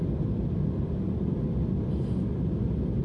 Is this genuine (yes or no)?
no